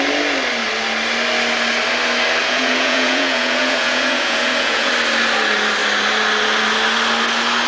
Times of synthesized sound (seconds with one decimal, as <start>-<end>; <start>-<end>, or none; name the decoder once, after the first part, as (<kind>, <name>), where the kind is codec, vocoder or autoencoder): 2.4-4.9 (vocoder, Vocos)